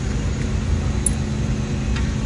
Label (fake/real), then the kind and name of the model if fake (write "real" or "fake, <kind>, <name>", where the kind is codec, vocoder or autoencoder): real